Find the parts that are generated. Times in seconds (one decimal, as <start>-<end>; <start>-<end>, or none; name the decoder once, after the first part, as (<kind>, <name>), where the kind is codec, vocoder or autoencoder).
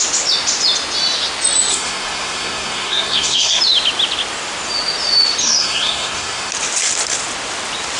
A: 1.7-3.6 (codec, SNAC); 5.4-6.5